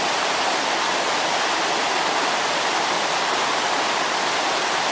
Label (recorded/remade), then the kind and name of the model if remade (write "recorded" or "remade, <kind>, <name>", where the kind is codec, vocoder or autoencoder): recorded